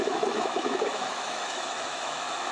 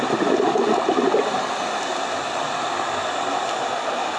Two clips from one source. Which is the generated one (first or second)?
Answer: first